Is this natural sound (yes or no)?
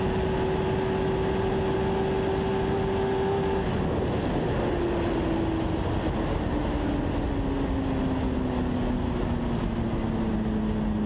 yes